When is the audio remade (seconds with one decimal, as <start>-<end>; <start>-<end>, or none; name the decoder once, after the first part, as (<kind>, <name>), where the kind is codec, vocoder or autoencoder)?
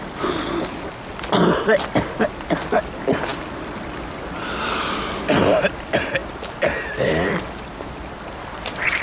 none